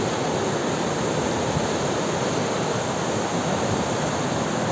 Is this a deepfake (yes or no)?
no